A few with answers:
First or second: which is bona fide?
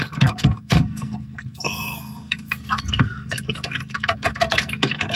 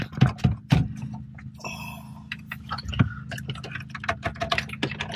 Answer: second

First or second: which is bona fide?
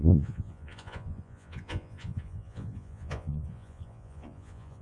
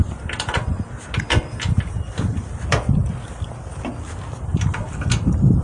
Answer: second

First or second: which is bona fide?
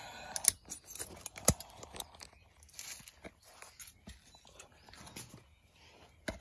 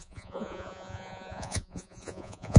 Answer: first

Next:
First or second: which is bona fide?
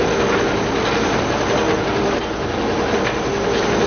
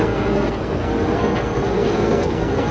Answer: first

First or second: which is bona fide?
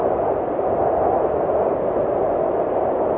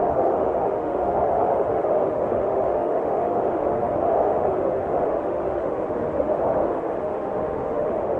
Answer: first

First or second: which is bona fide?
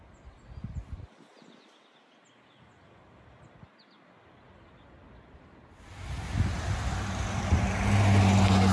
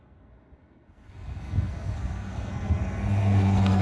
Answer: first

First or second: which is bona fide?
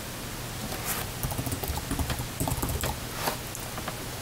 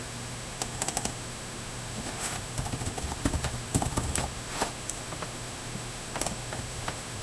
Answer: first